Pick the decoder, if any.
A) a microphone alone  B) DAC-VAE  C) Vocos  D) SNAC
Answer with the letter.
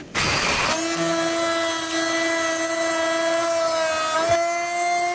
A